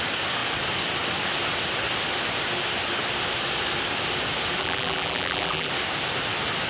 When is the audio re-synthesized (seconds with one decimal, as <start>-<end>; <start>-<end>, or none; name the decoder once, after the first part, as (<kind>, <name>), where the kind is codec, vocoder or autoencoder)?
4.6-5.7 (vocoder, BigVGAN v2)

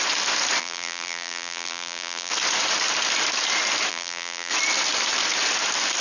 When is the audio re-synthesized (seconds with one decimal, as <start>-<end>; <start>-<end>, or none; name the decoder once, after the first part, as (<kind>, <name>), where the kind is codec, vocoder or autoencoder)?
0.6-2.3 (vocoder, BigVGAN v2); 3.9-4.5

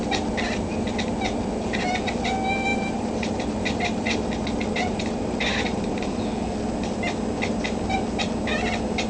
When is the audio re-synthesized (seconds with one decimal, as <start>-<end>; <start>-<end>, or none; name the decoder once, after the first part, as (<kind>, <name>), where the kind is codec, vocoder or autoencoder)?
2.7-6.2 (vocoder, BigVGAN v2)

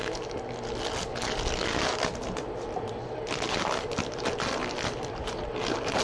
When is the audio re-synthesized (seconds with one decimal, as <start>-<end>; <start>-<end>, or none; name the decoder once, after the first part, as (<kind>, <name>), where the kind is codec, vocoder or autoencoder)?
none